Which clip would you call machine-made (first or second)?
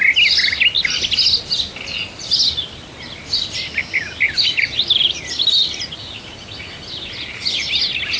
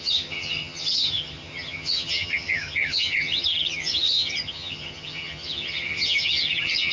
second